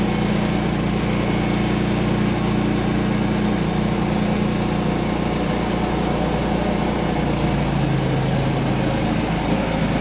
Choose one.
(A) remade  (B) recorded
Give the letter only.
B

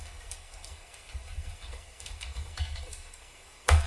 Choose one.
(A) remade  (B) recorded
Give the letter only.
A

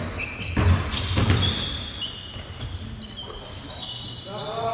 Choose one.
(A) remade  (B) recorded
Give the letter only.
B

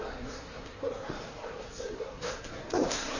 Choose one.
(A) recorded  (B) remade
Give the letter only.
B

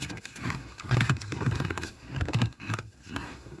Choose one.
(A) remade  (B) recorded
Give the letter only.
A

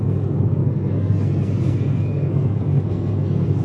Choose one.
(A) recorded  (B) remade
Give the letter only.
B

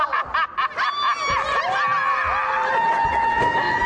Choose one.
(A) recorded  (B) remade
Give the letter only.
A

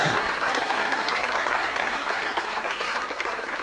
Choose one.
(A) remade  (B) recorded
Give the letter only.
A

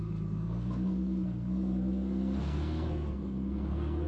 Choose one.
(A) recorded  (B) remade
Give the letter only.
B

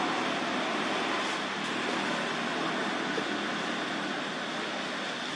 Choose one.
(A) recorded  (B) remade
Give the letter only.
A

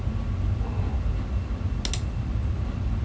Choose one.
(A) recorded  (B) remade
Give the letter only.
A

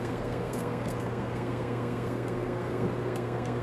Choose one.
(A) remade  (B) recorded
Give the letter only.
A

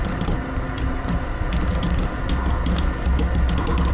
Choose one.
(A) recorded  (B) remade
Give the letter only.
A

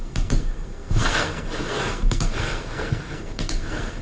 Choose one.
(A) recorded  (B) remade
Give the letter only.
B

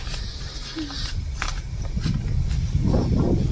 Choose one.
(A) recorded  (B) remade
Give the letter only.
A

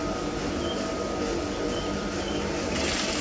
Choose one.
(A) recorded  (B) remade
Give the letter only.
A